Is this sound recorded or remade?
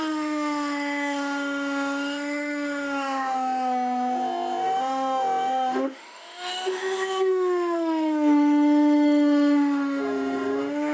remade